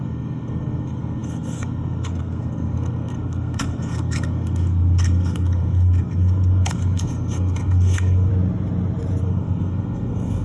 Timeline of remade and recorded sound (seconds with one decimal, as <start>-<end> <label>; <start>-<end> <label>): 0.0-8.3 remade; 8.3-9.2 recorded; 9.2-10.4 remade